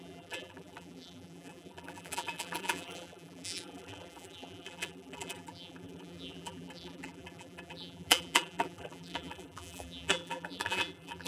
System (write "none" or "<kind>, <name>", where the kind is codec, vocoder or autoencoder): vocoder, BigVGAN v2